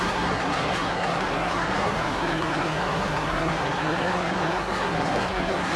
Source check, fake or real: fake